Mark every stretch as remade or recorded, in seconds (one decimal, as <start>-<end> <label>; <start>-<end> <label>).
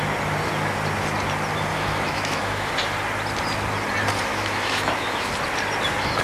0.0-1.7 recorded; 1.7-2.7 remade; 2.7-4.3 recorded; 4.3-5.3 remade; 5.3-6.2 recorded